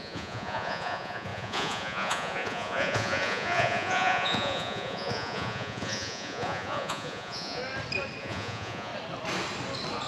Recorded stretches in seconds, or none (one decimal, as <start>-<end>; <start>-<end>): 7.6-8.2; 8.9-10.1